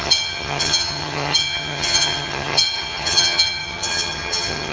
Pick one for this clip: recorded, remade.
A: remade